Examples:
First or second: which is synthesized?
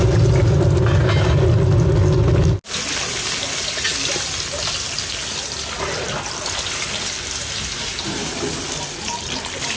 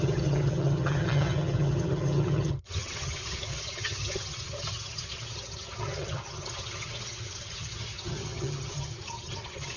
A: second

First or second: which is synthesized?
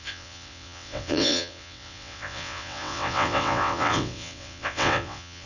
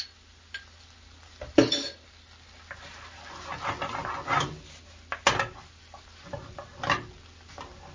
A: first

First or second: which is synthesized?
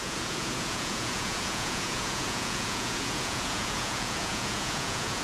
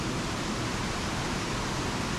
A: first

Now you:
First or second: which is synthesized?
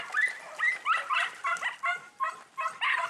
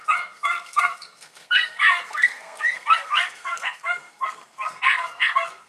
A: second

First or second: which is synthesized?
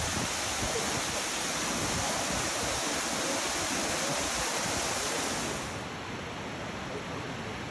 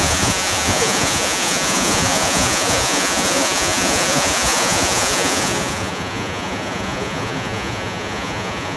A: second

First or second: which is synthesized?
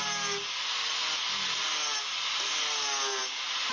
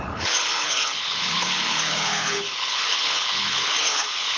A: second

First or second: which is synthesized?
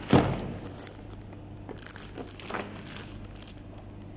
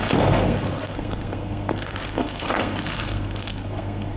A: second